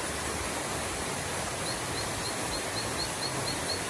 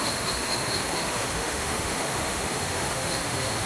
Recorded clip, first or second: first